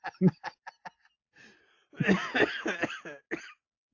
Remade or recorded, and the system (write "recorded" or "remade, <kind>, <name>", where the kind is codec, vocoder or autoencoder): recorded